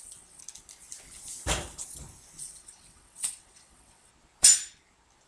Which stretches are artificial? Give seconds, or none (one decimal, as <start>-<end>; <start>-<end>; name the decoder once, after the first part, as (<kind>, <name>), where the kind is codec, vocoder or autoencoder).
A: 0.0-0.4 (vocoder, WaveNeXt); 2.4-4.1